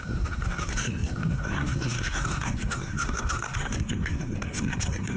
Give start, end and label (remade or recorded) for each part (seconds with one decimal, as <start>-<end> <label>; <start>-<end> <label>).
0.0-5.2 remade